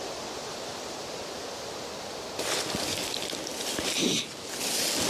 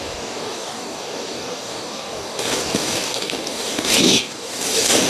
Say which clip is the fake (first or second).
second